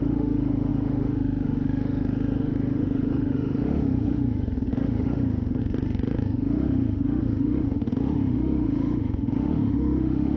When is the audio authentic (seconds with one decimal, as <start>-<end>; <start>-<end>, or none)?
none